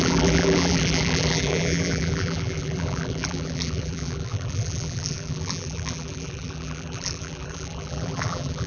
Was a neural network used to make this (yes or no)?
yes